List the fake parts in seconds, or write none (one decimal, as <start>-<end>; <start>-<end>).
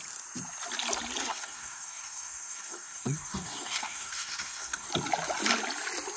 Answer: 1.2-4.9